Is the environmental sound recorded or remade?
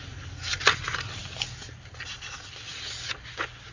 recorded